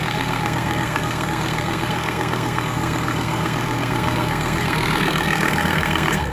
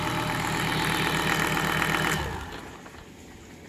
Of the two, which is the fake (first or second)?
first